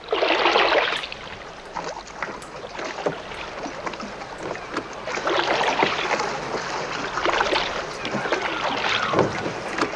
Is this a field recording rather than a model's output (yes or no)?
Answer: yes